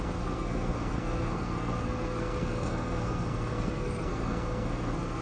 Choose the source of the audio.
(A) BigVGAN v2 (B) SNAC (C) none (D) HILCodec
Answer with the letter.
B